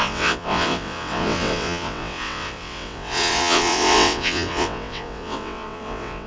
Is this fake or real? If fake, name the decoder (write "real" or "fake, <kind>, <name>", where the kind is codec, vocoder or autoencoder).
fake, vocoder, WaveNeXt